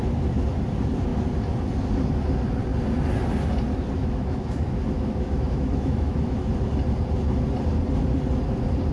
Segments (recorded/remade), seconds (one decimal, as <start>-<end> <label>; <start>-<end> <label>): 0.0-4.0 recorded; 4.0-6.5 remade; 6.5-8.9 recorded